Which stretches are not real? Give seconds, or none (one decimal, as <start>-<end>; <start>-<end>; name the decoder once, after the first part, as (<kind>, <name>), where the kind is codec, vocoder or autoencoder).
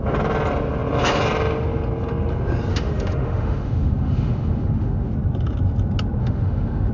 2.7-5.1 (autoencoder, DAC-VAE); 6.2-6.9